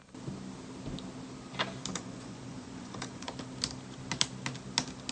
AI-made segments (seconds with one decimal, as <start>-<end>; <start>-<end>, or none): 1.9-3.3